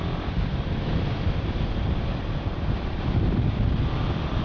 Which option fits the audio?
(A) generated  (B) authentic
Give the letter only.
B